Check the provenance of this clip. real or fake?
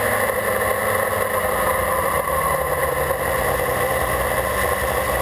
real